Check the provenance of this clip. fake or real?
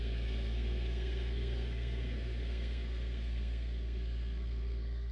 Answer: fake